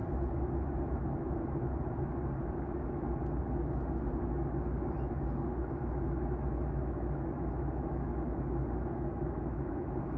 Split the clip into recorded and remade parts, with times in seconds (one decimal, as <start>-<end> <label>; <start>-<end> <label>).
0.0-10.2 remade

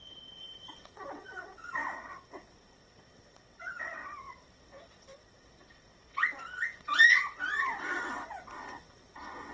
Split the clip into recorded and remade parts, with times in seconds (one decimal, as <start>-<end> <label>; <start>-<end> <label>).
0.0-9.5 remade

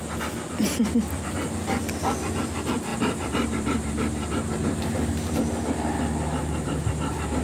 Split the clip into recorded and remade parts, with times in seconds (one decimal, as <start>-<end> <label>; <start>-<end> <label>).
0.0-2.9 recorded; 2.9-5.4 remade; 5.4-6.4 recorded; 6.4-7.4 remade

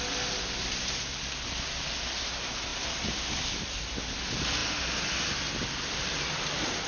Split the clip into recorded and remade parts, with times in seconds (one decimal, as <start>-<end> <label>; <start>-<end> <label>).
0.0-6.9 recorded

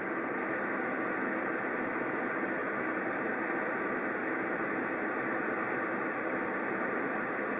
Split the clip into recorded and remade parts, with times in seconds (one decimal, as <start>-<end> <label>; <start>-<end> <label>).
0.0-2.6 recorded; 2.6-3.3 remade; 3.3-4.2 recorded; 4.2-7.6 remade

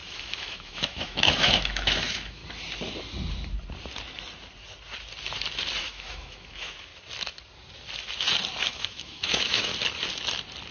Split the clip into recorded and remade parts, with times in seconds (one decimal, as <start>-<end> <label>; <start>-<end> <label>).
0.0-2.4 remade; 2.4-5.8 recorded; 5.8-6.9 remade; 6.9-8.6 recorded; 8.6-9.7 remade; 9.7-10.7 recorded

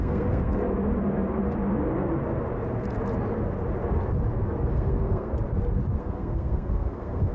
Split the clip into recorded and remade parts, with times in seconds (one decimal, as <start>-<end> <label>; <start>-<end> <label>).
0.0-0.6 remade; 0.6-4.7 recorded; 4.7-5.3 remade; 5.3-6.0 recorded; 6.0-7.3 remade